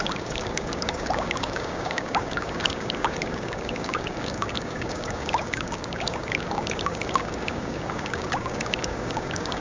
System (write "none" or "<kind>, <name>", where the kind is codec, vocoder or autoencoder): codec, DAC